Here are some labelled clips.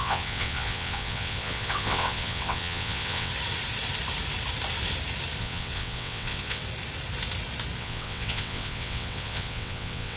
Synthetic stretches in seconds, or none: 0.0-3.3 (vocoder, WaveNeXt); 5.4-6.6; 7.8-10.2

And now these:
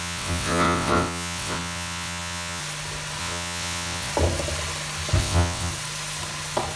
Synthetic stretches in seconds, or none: 0.0-2.6 (vocoder, WaveNeXt); 3.2-4.1; 5.2-5.7

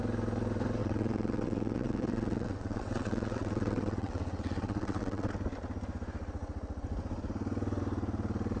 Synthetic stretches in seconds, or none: 0.8-5.3 (vocoder, WaveNeXt)

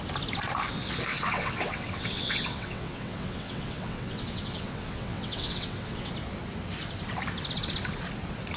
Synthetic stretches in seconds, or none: 1.1-6.1 (vocoder, WaveNeXt)